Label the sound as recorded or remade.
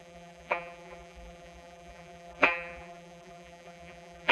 remade